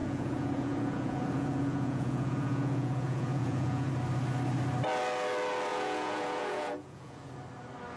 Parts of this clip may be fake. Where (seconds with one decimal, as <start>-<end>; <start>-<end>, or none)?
0.0-3.9; 5.7-7.3